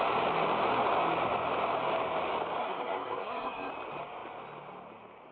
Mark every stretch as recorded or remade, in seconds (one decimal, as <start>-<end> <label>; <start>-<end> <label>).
0.0-2.6 recorded; 2.6-3.7 remade; 3.7-5.3 recorded